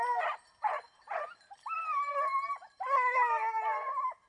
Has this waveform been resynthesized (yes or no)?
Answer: no